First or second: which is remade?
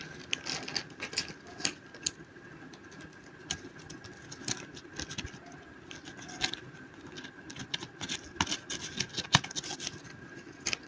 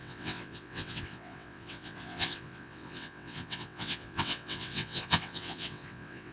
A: second